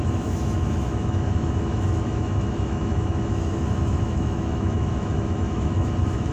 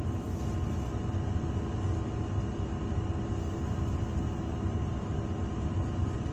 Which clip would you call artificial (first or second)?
first